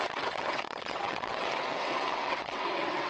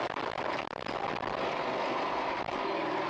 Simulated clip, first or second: first